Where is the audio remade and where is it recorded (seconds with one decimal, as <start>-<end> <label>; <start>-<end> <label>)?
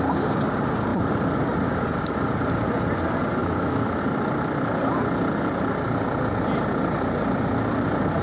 0.0-3.4 recorded; 3.4-4.0 remade; 4.0-8.2 recorded